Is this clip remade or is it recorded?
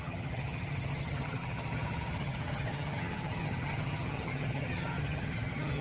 remade